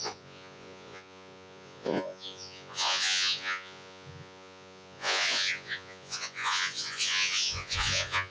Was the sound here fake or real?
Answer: fake